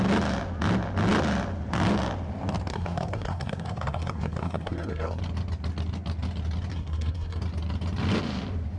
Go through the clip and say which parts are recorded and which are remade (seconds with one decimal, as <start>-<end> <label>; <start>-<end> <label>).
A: 0.0-2.7 recorded; 2.7-5.2 remade; 5.2-6.7 recorded; 6.7-7.4 remade; 7.4-8.8 recorded